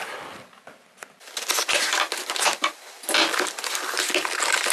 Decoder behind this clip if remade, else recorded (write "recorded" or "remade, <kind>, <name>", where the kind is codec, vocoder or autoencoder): recorded